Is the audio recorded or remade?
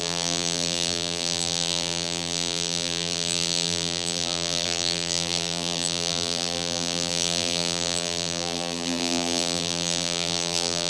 remade